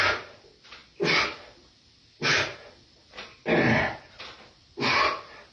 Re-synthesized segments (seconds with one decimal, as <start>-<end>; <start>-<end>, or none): none